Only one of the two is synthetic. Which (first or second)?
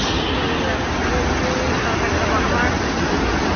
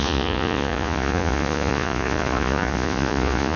second